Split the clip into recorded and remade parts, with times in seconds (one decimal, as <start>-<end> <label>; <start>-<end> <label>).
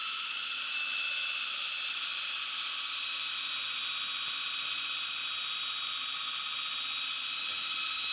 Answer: 0.0-8.1 recorded